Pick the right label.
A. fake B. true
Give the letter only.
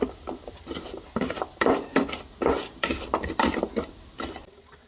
B